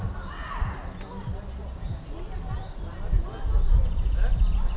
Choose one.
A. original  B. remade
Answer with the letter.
A